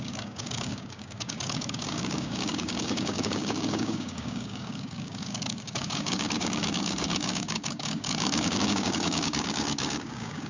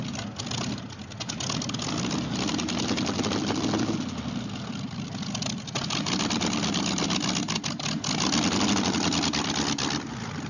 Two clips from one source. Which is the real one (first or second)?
second